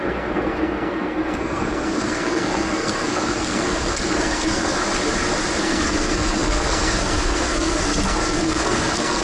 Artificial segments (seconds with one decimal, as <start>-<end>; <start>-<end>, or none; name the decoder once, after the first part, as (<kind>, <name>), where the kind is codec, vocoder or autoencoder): 0.0-4.8 (codec, SNAC); 5.6-9.2